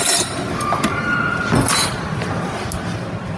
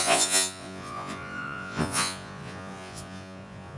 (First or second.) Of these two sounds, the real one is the first